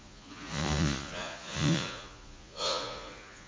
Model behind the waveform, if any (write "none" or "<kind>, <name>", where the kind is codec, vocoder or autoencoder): vocoder, Vocos